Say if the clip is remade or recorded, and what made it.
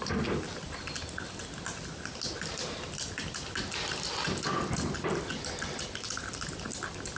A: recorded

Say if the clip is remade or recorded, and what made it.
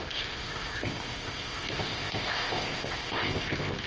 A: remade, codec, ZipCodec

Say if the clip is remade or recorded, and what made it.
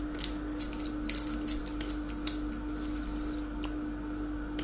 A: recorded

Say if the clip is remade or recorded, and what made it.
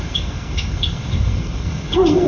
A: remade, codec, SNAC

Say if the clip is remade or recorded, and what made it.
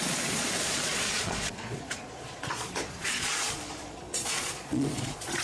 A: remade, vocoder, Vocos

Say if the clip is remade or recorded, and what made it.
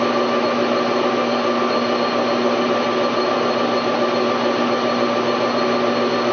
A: recorded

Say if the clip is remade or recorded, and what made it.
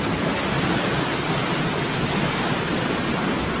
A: recorded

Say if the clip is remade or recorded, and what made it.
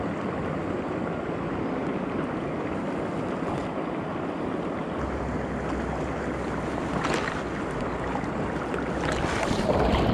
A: recorded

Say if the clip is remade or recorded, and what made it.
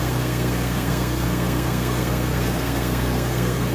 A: remade, codec, SNAC